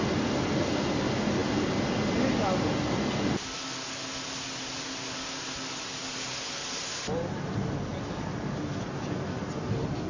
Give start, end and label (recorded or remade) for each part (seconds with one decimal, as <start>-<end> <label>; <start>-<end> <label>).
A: 0.0-10.1 recorded